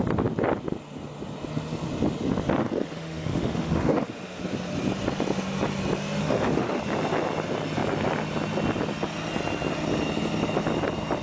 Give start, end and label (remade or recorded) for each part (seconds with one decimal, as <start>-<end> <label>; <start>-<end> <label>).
0.0-2.6 recorded; 2.6-4.4 remade; 4.4-6.2 recorded; 6.2-6.8 remade; 6.8-11.2 recorded